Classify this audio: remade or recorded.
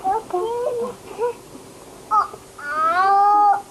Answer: recorded